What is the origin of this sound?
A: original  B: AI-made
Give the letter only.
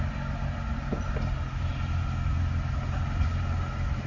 A